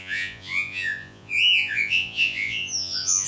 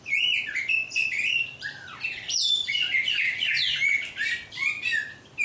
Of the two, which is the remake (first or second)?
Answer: first